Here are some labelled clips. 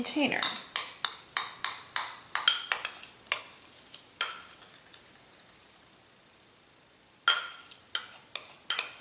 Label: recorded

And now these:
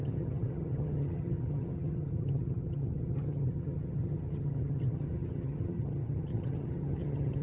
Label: remade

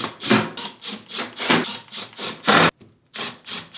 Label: recorded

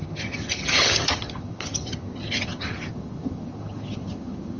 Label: remade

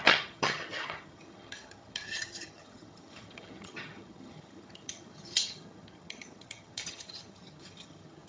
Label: remade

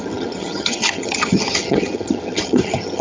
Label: remade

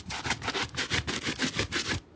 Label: recorded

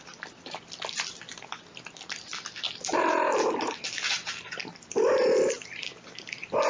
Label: recorded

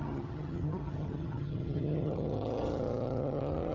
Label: remade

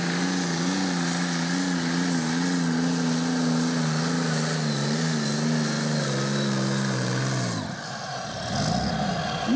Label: recorded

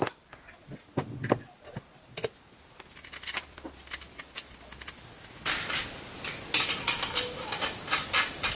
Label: recorded